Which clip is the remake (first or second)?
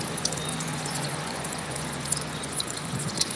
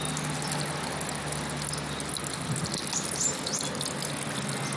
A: first